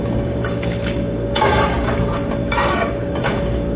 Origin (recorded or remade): remade